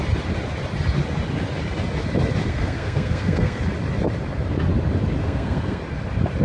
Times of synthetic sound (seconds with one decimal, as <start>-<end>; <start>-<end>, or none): 2.5-3.6; 5.2-5.8